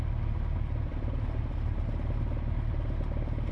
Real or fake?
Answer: real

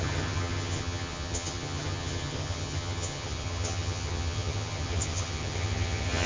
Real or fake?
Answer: fake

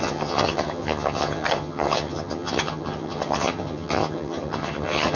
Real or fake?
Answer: fake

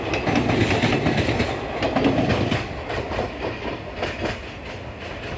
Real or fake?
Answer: real